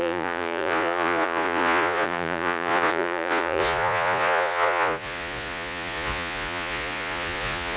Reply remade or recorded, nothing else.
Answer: remade